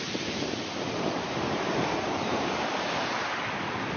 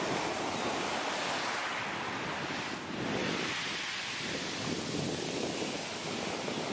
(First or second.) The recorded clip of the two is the second